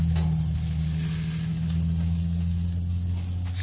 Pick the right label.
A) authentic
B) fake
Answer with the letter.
A